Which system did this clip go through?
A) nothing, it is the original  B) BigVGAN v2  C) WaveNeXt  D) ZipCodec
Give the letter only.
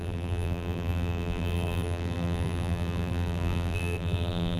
B